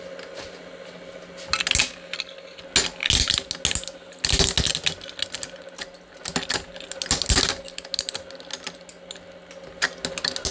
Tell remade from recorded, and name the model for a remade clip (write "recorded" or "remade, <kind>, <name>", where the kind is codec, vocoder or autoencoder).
recorded